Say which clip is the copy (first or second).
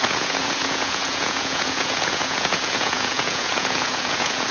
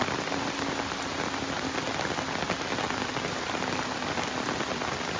first